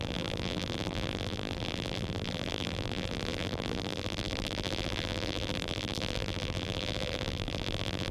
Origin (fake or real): fake